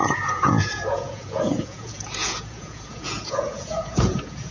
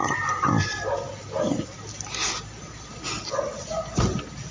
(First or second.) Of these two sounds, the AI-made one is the first